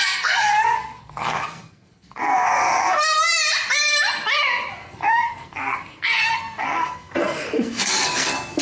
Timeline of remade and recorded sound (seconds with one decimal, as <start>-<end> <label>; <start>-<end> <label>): 0.0-3.2 remade; 3.2-4.8 recorded; 4.8-8.6 remade